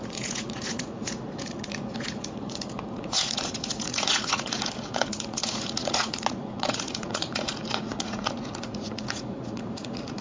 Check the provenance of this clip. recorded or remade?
remade